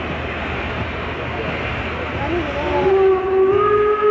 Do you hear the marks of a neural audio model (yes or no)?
no